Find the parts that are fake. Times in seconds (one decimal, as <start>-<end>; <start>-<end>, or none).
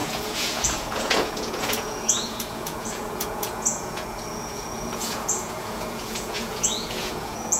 0.0-7.6